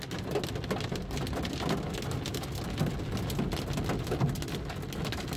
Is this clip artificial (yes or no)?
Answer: no